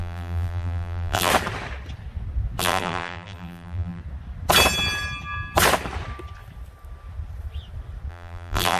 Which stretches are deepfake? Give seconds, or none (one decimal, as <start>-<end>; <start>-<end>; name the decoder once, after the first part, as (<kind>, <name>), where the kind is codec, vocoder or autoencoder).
0.0-1.3 (vocoder, BigVGAN v2); 2.6-4.0; 8.1-8.8